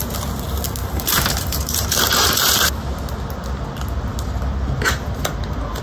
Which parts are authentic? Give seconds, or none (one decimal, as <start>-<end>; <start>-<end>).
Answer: 0.0-0.8; 2.7-5.8